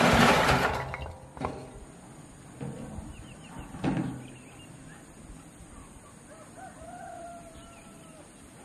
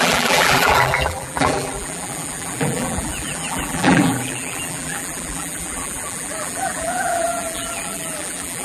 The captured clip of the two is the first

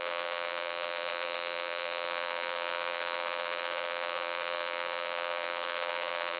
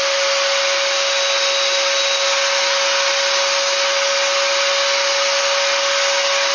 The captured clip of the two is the second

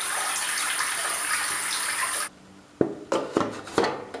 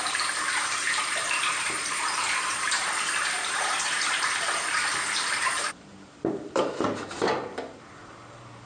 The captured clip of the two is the first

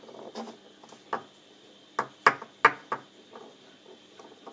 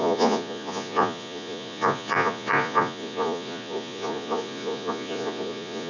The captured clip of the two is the first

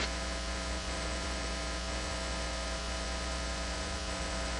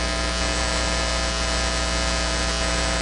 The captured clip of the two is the second